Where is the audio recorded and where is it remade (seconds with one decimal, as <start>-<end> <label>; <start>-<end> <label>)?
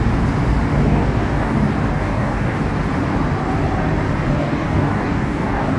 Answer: 0.0-0.7 recorded; 0.7-1.5 remade; 1.5-1.9 recorded; 1.9-2.6 remade; 2.6-4.4 recorded; 4.4-5.8 remade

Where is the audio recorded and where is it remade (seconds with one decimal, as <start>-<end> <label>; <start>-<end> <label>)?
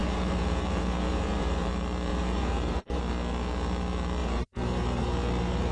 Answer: 0.0-1.7 remade; 1.7-2.1 recorded; 2.1-3.0 remade; 3.0-4.2 recorded; 4.2-5.7 remade